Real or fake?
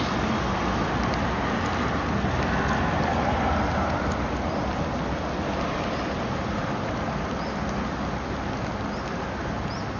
real